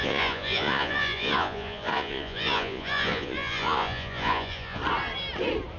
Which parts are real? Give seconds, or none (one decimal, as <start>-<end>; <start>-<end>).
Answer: 4.8-5.8